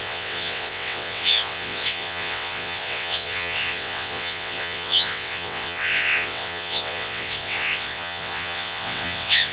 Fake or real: fake